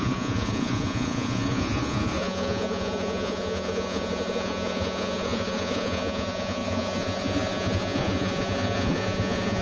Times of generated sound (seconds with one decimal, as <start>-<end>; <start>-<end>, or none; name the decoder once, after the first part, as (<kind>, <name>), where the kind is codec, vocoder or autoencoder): 0.0-9.6 (vocoder, Vocos)